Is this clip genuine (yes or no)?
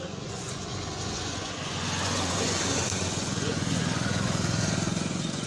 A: no